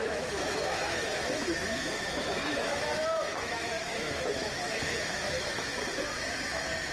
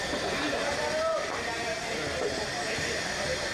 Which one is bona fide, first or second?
second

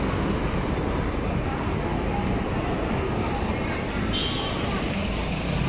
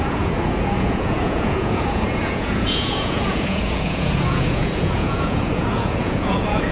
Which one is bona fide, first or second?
first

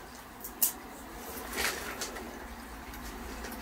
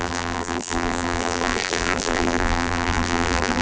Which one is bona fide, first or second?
first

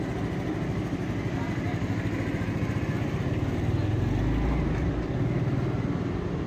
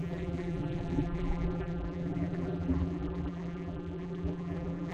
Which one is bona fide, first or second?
first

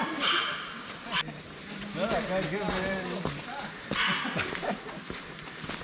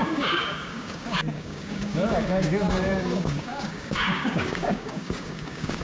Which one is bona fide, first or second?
first